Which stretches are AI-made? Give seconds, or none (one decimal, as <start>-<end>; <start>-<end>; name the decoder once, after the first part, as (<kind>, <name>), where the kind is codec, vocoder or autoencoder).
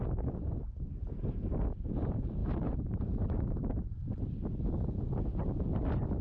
2.4-3.9 (vocoder, BigVGAN v2)